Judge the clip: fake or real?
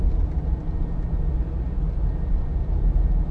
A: real